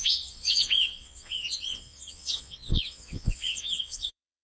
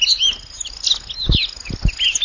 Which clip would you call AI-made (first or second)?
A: first